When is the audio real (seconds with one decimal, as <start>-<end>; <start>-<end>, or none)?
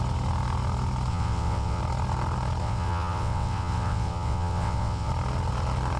0.0-1.1; 1.8-2.6; 5.1-6.0